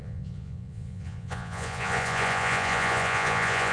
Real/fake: fake